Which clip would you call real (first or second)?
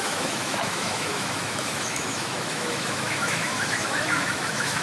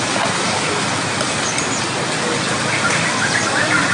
second